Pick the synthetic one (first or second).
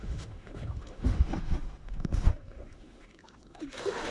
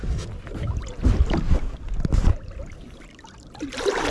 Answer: first